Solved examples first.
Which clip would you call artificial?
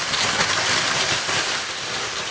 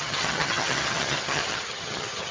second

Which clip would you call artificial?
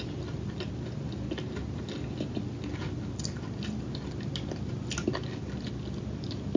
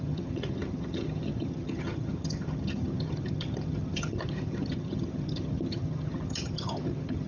second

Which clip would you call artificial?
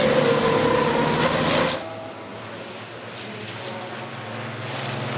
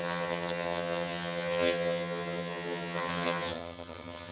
second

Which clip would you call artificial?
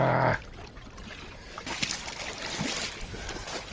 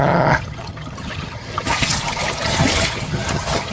second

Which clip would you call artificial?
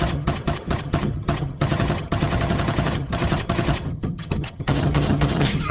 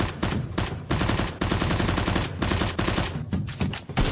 first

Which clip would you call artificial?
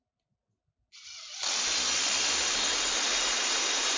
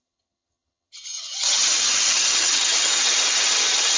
second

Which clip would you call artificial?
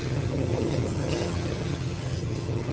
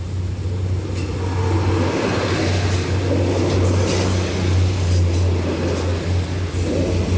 first